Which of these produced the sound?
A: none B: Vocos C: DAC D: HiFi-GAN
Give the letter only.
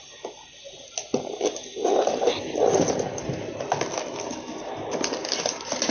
A